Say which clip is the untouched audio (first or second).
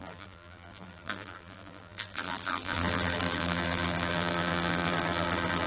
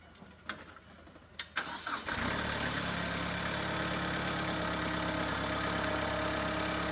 second